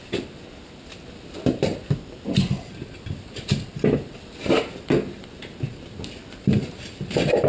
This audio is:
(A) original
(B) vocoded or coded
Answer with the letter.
A